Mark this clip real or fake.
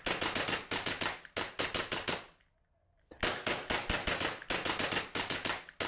real